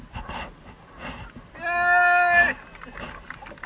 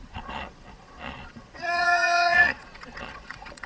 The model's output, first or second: second